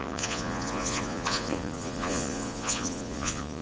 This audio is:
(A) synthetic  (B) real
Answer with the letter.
A